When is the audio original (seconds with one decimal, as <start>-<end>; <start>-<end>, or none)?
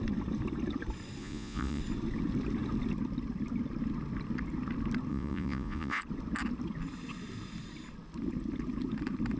0.0-1.2; 1.8-5.1; 6.0-9.4